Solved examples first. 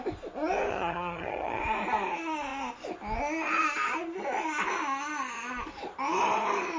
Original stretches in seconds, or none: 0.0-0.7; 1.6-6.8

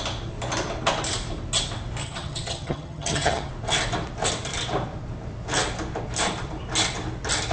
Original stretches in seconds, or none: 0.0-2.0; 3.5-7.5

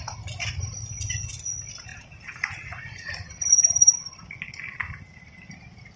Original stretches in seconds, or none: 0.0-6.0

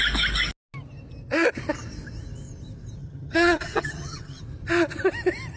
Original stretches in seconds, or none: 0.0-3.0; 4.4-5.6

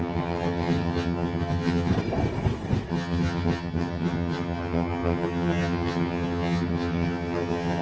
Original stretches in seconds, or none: 1.9-2.9